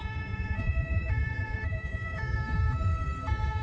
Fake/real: fake